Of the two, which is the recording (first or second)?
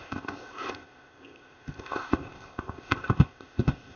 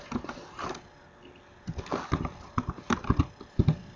second